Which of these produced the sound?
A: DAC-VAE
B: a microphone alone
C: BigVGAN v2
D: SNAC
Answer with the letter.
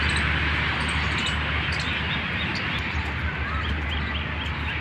B